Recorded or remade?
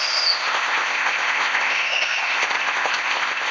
remade